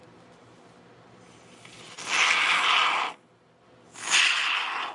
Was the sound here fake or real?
real